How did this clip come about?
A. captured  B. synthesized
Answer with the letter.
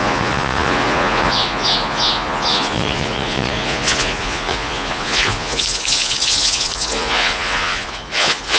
B